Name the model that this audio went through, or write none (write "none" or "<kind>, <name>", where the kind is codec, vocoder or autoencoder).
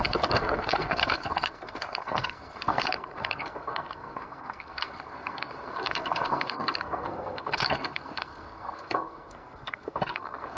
codec, SNAC